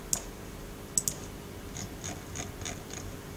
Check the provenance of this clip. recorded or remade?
recorded